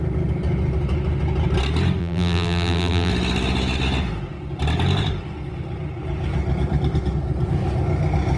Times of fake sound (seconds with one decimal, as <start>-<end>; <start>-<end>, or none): 2.0-3.1